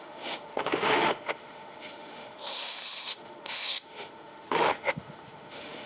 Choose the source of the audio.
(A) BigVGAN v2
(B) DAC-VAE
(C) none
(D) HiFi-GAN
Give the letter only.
B